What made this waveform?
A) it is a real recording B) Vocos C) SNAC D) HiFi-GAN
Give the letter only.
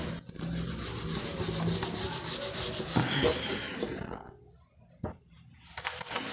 A